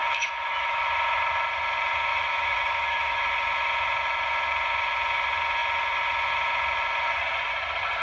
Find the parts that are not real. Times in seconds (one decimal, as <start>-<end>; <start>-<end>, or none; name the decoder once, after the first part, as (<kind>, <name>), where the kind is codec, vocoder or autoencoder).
0.0-0.8 (autoencoder, DAC-VAE); 2.1-3.2